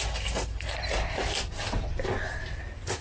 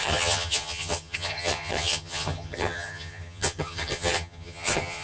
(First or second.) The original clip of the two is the first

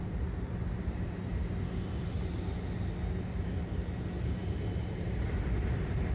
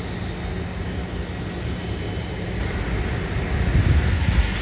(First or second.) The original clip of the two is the second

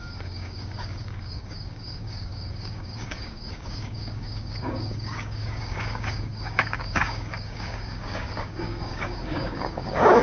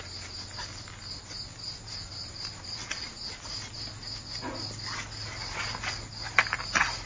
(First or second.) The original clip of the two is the second